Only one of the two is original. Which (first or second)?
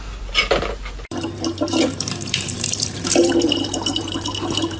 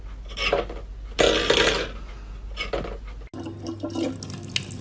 second